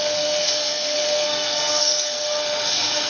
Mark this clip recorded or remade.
remade